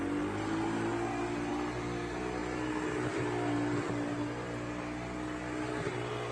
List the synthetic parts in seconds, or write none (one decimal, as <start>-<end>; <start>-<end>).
none